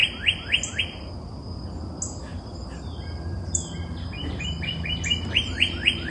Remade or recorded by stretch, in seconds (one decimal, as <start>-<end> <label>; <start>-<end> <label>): 0.0-2.3 recorded; 2.3-6.1 remade